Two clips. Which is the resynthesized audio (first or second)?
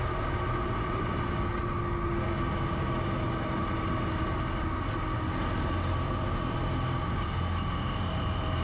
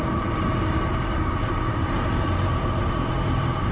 second